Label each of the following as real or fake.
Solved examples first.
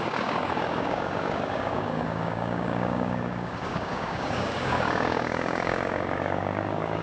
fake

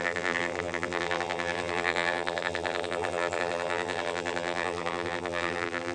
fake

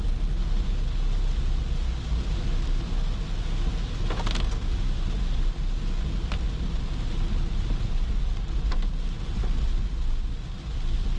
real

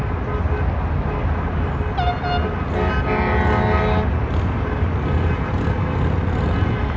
real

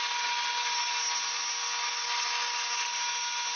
real